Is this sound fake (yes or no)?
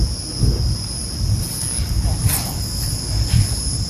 no